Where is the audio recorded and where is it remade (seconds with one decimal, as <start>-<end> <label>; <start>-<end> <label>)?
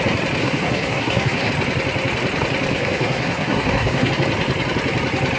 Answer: 0.0-0.4 recorded; 0.4-1.5 remade; 1.5-2.7 recorded; 2.7-4.1 remade; 4.1-5.4 recorded